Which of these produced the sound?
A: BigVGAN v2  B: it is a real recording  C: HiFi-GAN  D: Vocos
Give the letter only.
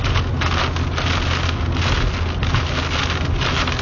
B